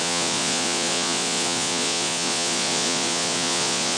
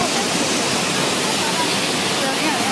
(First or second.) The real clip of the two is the second